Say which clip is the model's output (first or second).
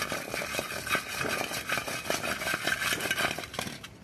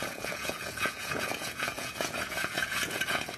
second